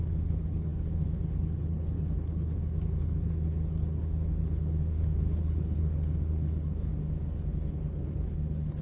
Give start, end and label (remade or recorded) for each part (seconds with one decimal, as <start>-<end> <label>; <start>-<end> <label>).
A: 0.0-6.9 remade; 6.9-7.5 recorded; 7.5-8.8 remade